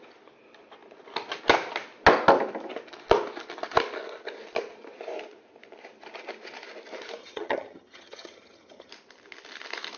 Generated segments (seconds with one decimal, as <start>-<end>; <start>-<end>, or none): 7.2-8.9